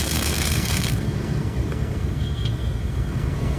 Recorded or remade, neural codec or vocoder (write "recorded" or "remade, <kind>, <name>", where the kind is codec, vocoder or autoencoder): remade, codec, SNAC